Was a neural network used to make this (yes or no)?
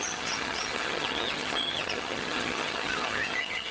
yes